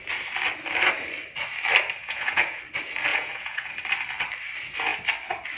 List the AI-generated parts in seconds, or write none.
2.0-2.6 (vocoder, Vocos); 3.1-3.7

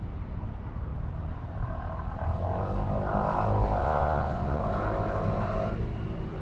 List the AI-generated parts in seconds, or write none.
3.8-4.6 (vocoder, Vocos)

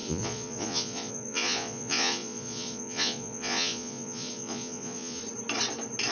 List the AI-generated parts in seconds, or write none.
0.0-5.2 (vocoder, Vocos)

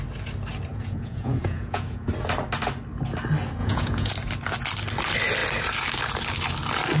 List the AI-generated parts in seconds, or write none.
0.7-2.1 (vocoder, Vocos); 3.6-4.1

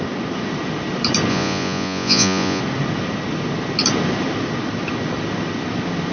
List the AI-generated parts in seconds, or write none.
1.3-2.6 (vocoder, Vocos)

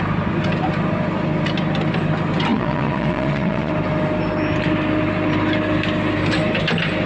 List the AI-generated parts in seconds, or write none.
2.5-3.7 (vocoder, Vocos)

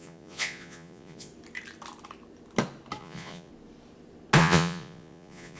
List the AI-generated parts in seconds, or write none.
0.0-1.3 (vocoder, Vocos); 3.0-3.5; 4.4-5.6